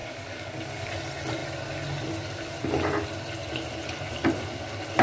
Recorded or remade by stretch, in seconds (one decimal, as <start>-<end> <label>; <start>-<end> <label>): 0.0-0.9 remade; 0.9-5.0 recorded